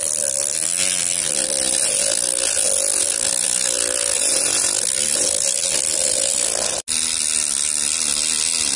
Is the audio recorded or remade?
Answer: recorded